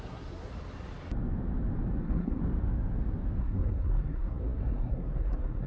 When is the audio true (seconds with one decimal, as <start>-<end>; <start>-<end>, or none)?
0.5-2.0; 2.4-3.4